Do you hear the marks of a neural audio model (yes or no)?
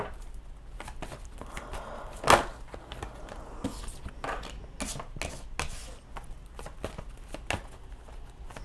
no